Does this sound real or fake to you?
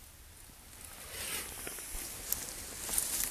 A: real